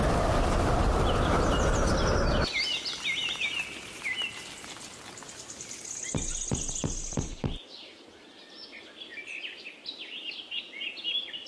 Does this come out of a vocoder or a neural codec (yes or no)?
no